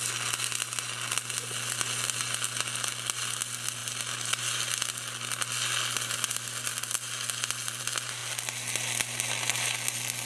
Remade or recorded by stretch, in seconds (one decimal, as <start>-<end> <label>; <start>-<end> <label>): 0.0-10.3 recorded